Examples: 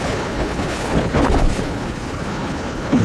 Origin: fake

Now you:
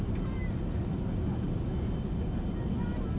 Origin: real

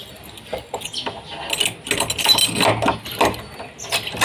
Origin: real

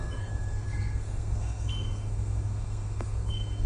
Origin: fake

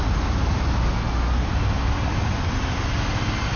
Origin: real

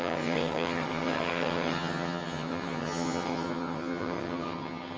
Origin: fake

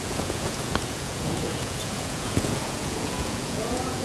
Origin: fake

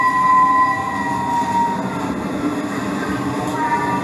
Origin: real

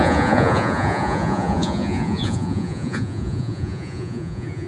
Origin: fake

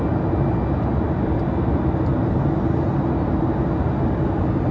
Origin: real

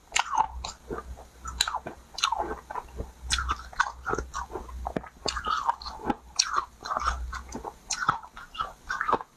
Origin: real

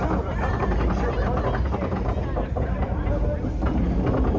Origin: real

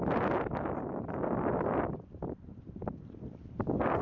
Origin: real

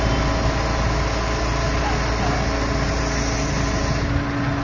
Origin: real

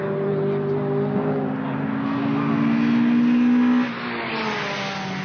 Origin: real